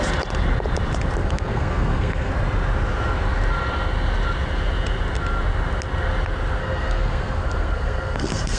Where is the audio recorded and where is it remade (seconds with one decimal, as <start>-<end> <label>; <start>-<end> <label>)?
0.0-1.2 recorded; 1.2-2.3 remade; 2.3-6.6 recorded; 6.6-8.6 remade